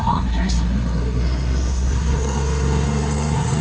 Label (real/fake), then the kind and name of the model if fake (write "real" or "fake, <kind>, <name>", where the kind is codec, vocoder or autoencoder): fake, codec, SNAC